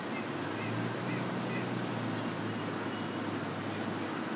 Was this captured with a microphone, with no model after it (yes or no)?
yes